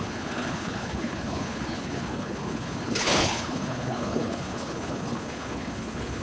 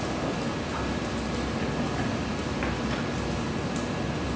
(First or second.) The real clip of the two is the second